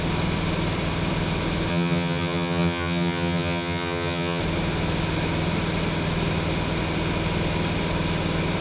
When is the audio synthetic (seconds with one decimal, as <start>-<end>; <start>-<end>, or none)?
1.7-4.4